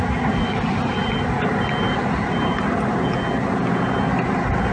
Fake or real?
real